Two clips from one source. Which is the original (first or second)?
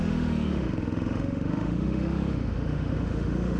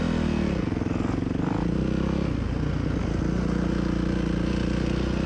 second